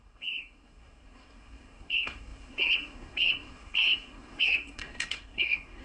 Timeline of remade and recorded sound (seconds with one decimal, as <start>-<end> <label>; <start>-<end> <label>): 0.0-5.8 remade